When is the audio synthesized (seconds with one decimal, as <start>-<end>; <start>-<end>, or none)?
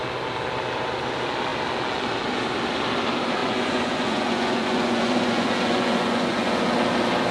3.4-6.7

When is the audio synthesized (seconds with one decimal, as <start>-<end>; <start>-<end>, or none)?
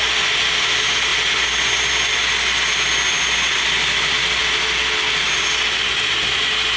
none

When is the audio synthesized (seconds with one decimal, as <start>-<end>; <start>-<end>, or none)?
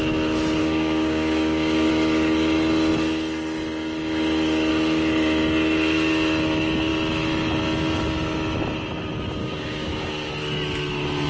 0.6-1.9; 9.4-10.3